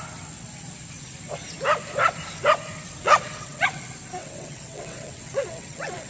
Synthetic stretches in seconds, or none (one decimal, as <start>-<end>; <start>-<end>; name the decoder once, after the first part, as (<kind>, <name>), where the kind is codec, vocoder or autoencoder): 3.0-3.8 (vocoder, WaveNeXt); 4.2-6.1